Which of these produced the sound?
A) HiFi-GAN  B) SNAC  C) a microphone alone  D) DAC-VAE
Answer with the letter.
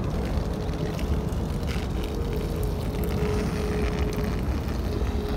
C